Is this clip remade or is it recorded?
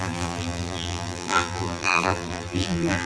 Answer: remade